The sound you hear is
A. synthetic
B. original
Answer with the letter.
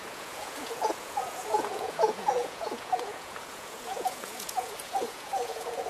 A